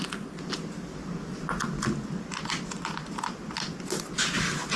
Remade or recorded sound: recorded